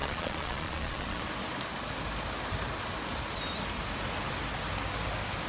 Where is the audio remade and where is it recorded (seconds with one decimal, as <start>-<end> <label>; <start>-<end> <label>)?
0.0-1.2 remade; 1.2-5.5 recorded